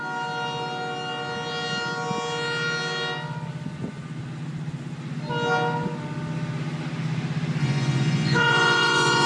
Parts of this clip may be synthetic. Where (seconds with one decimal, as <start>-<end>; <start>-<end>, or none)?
7.6-9.3